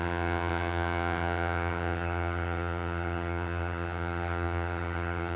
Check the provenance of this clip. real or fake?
fake